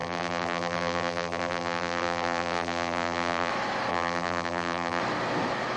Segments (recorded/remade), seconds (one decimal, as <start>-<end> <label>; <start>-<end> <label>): 0.0-3.5 remade; 3.5-3.9 recorded; 3.9-5.0 remade; 5.0-5.8 recorded